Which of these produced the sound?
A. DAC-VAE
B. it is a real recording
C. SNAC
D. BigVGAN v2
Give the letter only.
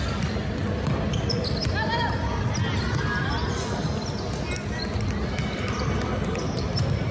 B